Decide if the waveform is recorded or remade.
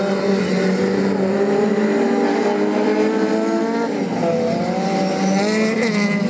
recorded